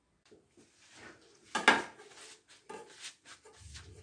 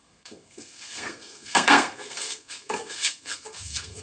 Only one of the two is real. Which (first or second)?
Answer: first